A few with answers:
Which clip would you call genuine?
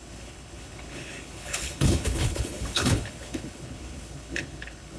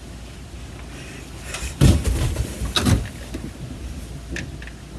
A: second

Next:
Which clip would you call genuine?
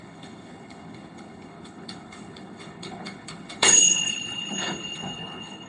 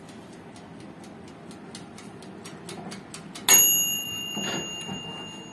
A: second